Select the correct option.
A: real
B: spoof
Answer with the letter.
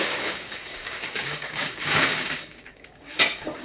B